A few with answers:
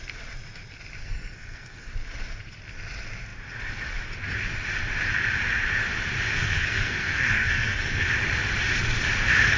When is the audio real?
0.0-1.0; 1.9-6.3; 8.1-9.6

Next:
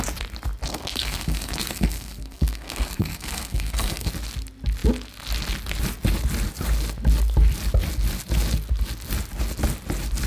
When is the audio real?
0.0-0.7; 4.1-10.3

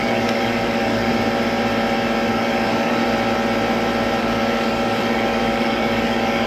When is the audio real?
1.1-2.3; 3.0-4.2

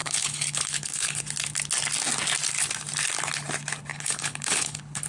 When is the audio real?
1.2-3.9